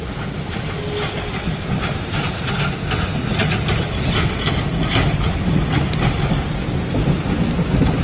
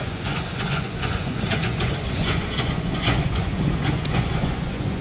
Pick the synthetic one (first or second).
second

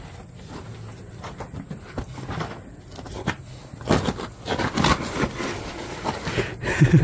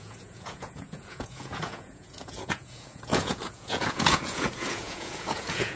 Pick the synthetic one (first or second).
second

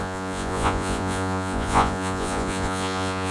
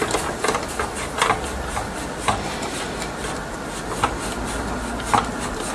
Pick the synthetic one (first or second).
first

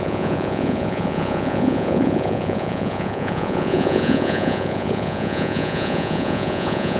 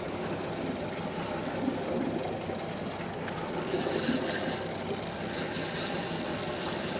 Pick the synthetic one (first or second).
first